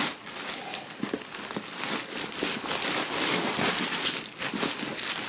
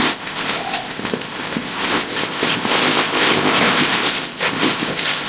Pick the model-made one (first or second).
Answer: second